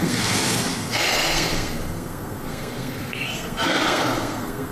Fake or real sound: fake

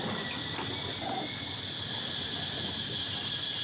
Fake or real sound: real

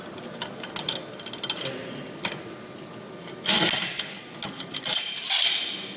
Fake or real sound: real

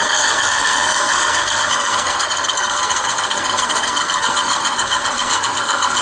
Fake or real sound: fake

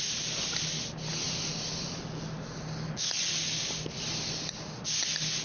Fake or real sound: real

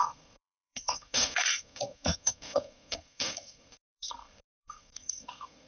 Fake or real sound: fake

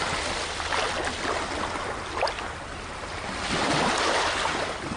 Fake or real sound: real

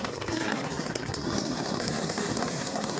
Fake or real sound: fake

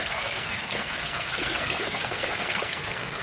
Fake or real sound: fake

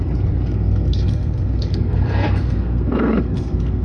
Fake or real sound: fake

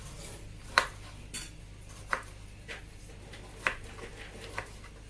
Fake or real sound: real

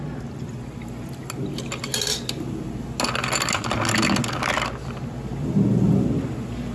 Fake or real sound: real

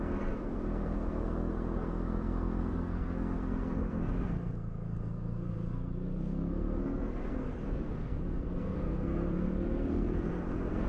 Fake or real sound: fake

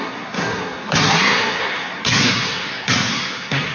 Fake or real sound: fake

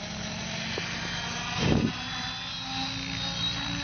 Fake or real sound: real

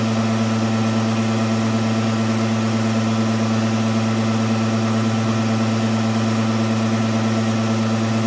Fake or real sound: real